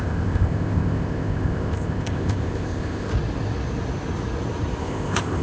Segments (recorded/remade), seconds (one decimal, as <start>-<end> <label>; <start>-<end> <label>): 0.0-3.1 remade; 3.1-4.8 recorded; 4.8-5.4 remade

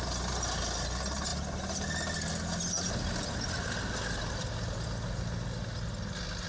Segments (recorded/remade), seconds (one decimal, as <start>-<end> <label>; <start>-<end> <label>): 0.0-6.5 recorded